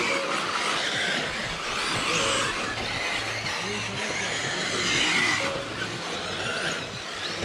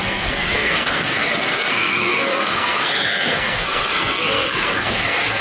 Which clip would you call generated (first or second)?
second